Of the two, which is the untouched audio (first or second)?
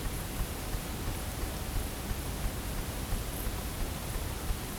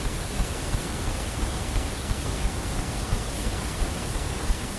first